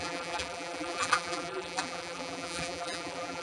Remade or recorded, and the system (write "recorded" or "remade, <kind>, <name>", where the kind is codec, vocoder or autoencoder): remade, vocoder, BigVGAN v2